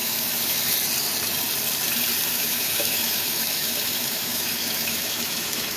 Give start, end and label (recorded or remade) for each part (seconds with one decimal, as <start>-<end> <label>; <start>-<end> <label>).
0.0-0.7 remade; 0.7-2.3 recorded; 2.3-5.8 remade